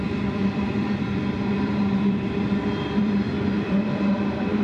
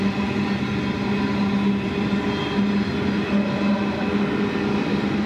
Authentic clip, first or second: second